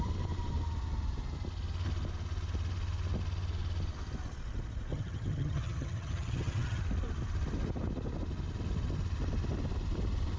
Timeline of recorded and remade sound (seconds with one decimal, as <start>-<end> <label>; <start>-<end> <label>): 0.0-4.9 recorded; 4.9-6.8 remade; 6.8-10.4 recorded